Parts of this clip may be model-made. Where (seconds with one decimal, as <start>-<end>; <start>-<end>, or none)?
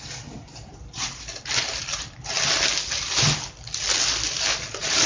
none